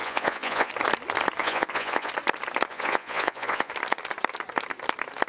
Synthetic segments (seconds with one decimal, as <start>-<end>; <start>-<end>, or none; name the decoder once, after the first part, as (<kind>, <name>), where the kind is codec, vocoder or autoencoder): 0.0-0.7 (vocoder, Vocos); 1.4-2.1; 2.7-3.7